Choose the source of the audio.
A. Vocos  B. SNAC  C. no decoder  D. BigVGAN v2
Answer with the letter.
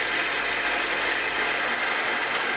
C